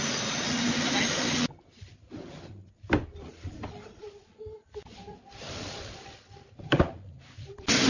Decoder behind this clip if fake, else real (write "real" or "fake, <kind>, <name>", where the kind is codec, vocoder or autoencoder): real